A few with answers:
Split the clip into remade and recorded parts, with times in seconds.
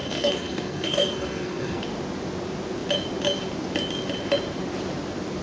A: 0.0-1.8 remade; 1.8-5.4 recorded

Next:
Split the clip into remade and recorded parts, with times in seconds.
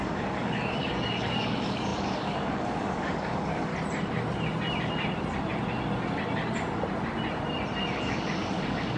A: 0.0-3.7 remade; 3.7-7.9 recorded; 7.9-9.0 remade